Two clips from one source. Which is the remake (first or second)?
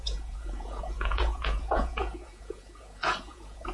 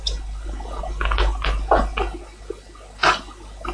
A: first